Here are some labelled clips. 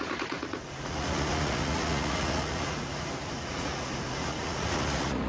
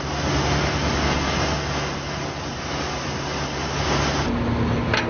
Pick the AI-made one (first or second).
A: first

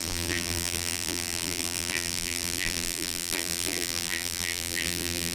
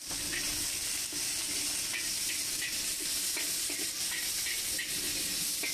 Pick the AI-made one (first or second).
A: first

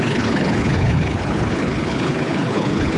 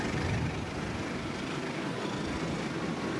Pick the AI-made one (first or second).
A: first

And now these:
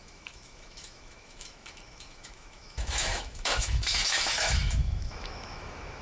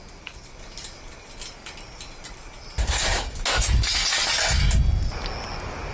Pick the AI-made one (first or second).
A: first